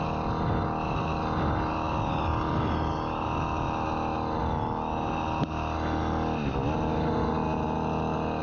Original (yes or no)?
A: yes